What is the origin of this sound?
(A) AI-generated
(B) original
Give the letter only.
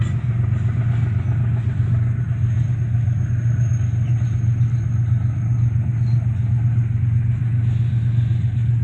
B